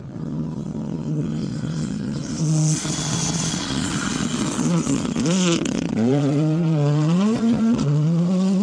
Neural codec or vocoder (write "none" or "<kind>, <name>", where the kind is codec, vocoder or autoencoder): vocoder, Vocos